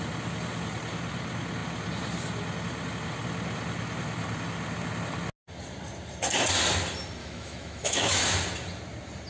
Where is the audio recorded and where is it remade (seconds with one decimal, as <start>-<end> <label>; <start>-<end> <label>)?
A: 0.0-7.2 recorded; 7.2-8.2 remade; 8.2-9.3 recorded